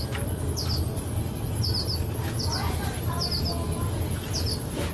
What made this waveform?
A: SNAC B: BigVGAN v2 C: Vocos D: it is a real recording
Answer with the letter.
D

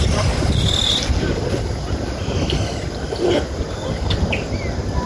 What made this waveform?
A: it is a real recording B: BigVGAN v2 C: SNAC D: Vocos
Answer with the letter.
A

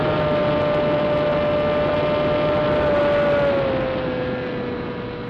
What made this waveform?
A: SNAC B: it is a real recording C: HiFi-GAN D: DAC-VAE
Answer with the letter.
B